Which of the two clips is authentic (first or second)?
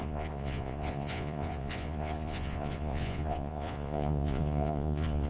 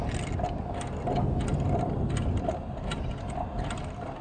second